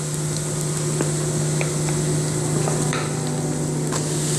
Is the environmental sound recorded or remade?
recorded